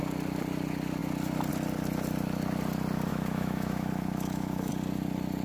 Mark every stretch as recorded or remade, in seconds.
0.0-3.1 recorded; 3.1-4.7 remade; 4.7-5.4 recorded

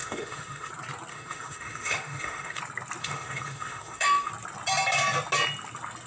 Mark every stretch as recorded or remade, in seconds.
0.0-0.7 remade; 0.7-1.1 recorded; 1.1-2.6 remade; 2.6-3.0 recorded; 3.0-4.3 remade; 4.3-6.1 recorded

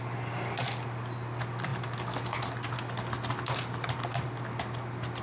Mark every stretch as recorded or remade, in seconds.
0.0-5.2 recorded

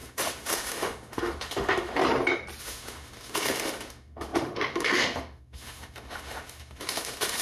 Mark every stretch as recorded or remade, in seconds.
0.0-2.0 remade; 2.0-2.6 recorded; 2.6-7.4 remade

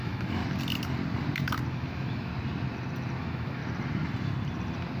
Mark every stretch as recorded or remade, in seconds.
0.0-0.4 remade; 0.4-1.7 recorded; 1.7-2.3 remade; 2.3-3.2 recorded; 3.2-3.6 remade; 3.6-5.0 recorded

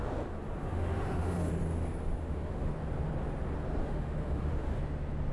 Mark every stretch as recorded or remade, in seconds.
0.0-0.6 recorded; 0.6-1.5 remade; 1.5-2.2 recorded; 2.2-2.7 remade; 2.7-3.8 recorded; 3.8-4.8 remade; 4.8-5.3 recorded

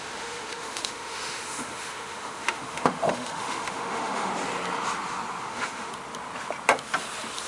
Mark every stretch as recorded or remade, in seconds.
0.0-4.3 remade; 4.3-5.4 recorded; 5.4-5.9 remade; 5.9-7.5 recorded